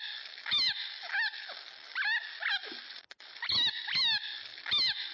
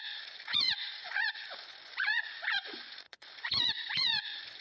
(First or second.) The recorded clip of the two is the first